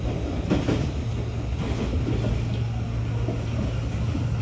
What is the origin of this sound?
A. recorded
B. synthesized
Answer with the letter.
A